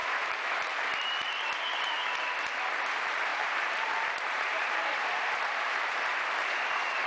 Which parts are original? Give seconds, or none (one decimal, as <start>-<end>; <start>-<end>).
1.1-3.3; 6.0-7.1